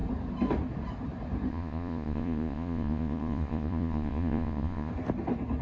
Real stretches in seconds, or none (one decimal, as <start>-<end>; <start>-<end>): 0.0-1.5; 4.9-5.6

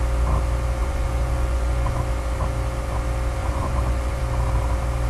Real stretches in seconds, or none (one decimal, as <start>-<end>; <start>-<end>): 0.0-0.8; 2.0-3.4; 4.2-5.1

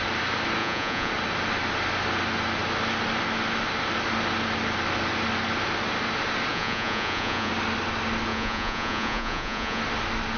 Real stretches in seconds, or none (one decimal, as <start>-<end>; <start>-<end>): 0.0-0.6; 1.1-6.5; 7.5-8.3; 9.8-10.4